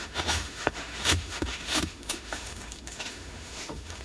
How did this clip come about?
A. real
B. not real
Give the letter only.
B